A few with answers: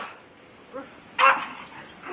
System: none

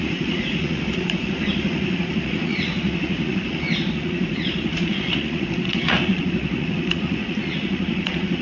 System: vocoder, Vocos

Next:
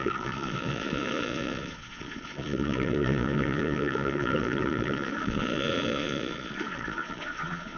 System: vocoder, Vocos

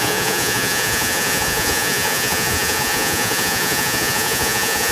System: vocoder, Vocos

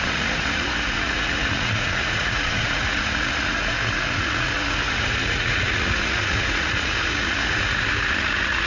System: vocoder, Vocos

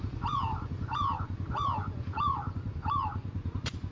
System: vocoder, Vocos